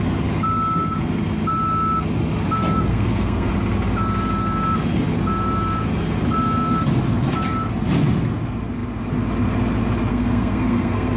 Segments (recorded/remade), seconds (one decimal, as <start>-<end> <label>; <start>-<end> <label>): 0.0-2.9 recorded; 2.9-3.5 remade; 3.5-10.1 recorded; 10.1-11.2 remade